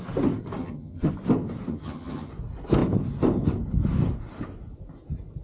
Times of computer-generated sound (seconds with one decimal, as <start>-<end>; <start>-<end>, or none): 0.6-1.1; 1.7-2.3